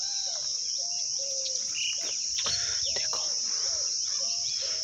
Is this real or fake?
real